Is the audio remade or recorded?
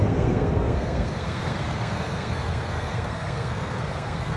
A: remade